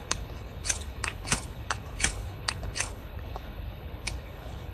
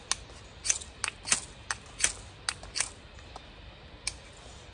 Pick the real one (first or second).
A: second